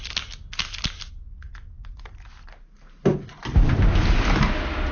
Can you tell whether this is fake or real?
real